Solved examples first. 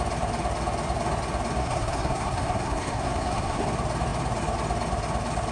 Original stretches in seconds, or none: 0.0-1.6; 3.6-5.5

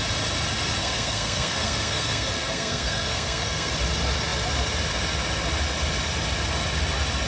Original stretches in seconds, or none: 0.0-0.8; 3.7-7.3

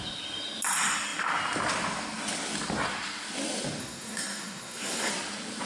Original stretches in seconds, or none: 0.0-3.8; 5.1-5.7

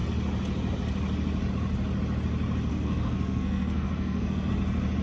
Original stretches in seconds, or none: 0.0-2.7; 4.5-5.0